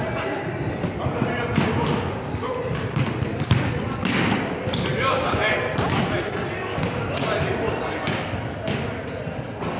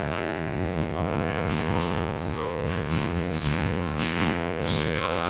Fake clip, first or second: second